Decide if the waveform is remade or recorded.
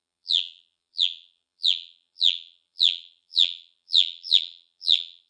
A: remade